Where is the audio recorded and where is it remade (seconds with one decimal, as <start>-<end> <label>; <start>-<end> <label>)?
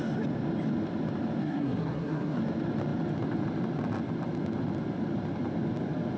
0.0-1.4 recorded; 1.4-2.4 remade; 2.4-6.2 recorded